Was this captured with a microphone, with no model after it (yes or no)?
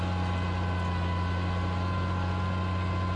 yes